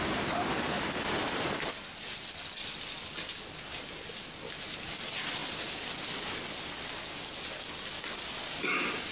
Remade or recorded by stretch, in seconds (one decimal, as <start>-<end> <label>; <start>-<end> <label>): 0.0-9.1 recorded